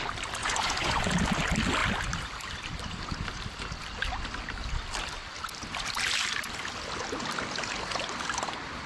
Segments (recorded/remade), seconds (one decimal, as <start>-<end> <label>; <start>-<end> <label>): 0.0-0.4 recorded; 0.4-1.0 remade; 1.0-8.9 recorded